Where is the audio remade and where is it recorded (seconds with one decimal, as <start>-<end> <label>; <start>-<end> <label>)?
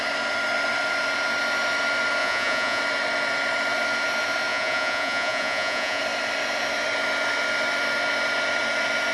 0.0-2.2 recorded; 2.2-2.8 remade; 2.8-4.5 recorded; 4.5-6.0 remade; 6.0-9.1 recorded